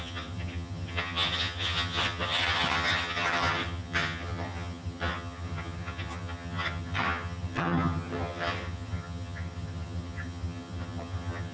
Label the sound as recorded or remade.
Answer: remade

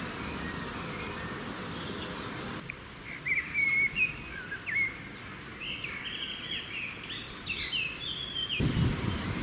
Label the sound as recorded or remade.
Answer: remade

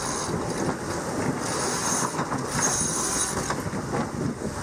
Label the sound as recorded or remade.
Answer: recorded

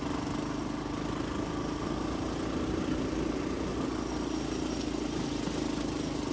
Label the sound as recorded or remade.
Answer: recorded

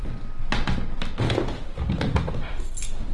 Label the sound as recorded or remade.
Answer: recorded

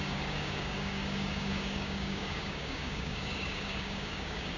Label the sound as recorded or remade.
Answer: remade